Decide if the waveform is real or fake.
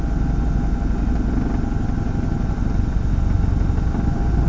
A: real